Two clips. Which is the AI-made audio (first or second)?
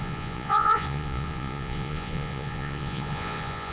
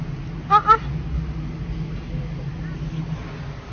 first